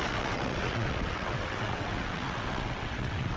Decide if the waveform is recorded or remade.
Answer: remade